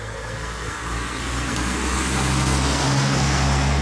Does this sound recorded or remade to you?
remade